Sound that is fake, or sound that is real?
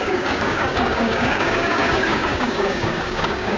fake